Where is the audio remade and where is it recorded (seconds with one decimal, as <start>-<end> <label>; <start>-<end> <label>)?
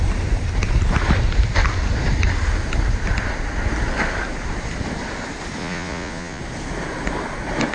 0.0-5.6 recorded; 5.6-6.4 remade; 6.4-7.7 recorded